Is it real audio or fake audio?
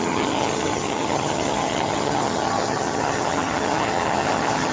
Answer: fake